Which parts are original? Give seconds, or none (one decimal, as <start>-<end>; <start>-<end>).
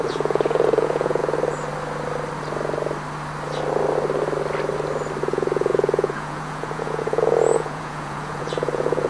1.2-5.2